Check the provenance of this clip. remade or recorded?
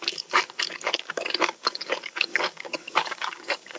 remade